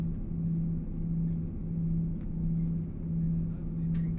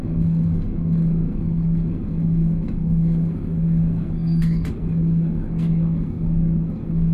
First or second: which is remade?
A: second